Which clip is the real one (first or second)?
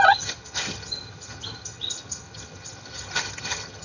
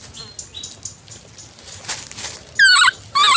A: second